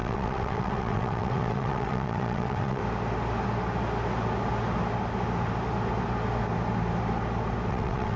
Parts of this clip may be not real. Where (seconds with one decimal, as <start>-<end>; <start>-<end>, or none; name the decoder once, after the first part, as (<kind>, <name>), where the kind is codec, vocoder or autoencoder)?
0.0-2.8 (vocoder, WaveNeXt); 7.7-8.2